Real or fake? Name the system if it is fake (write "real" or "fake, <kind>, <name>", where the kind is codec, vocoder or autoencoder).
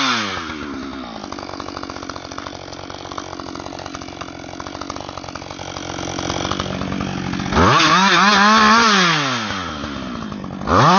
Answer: real